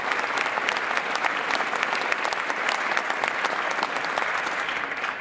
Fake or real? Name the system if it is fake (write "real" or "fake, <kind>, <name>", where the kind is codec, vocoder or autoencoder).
real